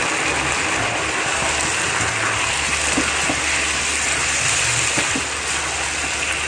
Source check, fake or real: real